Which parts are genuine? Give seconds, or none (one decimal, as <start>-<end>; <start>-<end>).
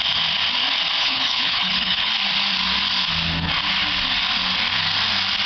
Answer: 0.0-1.0; 2.1-5.5